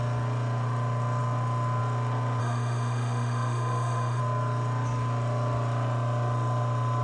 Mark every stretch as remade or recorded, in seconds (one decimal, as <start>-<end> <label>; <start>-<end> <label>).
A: 0.0-2.4 recorded; 2.4-4.2 remade; 4.2-7.0 recorded